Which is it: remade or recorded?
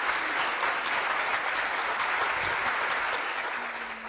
recorded